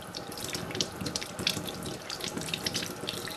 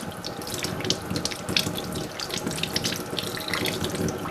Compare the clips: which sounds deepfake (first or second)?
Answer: first